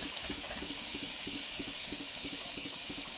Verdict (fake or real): fake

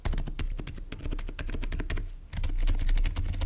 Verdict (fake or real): real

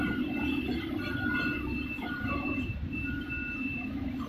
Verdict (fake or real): real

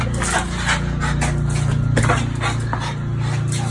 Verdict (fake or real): real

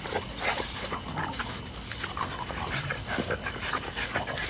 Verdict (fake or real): real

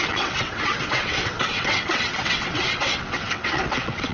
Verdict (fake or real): fake